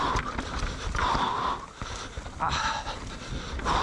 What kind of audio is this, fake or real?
real